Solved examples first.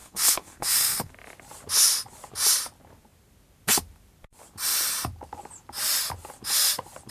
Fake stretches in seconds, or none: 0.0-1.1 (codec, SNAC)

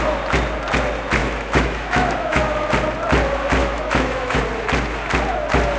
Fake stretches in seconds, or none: 1.2-2.4 (autoencoder, DAC-VAE); 3.6-4.4

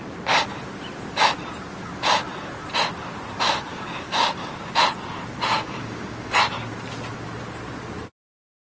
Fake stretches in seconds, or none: 3.7-4.5 (codec, DAC); 5.5-6.4

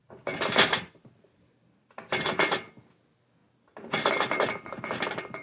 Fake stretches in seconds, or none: none

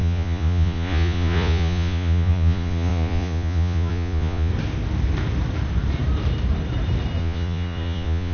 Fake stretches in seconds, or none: 0.0-4.5 (vocoder, Vocos); 7.2-8.3

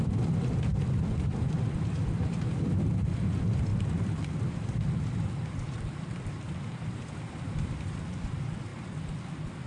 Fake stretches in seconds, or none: 0.0-8.7 (vocoder, BigVGAN v2)